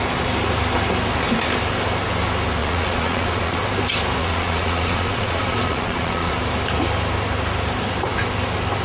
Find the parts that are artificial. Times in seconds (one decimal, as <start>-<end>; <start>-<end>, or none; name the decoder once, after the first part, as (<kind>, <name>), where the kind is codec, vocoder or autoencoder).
2.6-3.6 (vocoder, Vocos); 4.2-6.3